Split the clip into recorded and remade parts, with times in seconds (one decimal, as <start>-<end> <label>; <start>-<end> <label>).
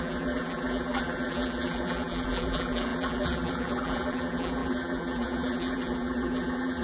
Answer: 0.0-6.8 remade